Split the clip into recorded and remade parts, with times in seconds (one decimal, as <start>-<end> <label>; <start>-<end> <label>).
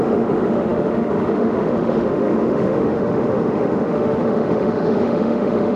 0.0-5.8 remade